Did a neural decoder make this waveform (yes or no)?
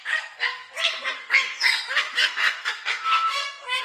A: yes